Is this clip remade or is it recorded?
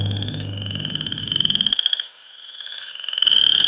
remade